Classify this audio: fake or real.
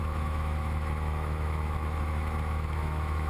fake